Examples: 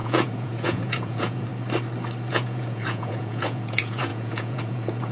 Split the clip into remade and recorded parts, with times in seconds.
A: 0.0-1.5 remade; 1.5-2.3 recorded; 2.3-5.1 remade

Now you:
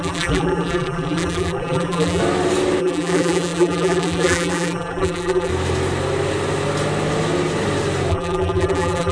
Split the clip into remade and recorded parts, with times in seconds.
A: 0.0-2.2 remade; 2.2-2.8 recorded; 2.8-5.5 remade; 5.5-8.1 recorded; 8.1-9.1 remade

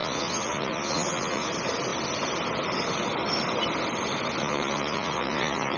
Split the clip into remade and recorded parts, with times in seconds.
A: 0.0-1.5 remade; 1.5-4.4 recorded; 4.4-5.8 remade

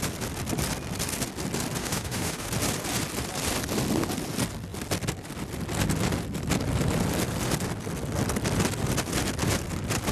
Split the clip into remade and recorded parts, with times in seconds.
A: 0.0-1.8 recorded; 1.8-2.5 remade; 2.5-10.1 recorded

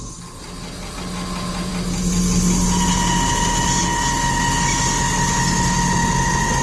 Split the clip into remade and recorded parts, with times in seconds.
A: 0.0-6.6 recorded

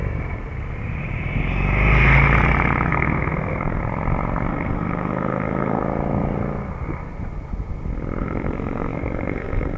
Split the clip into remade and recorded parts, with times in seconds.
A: 0.0-2.9 recorded; 2.9-3.8 remade; 3.8-4.5 recorded; 4.5-5.8 remade; 5.8-8.2 recorded; 8.2-9.8 remade